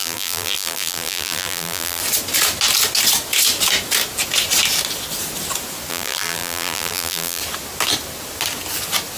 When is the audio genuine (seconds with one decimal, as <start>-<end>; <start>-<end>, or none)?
2.0-5.9; 7.4-9.2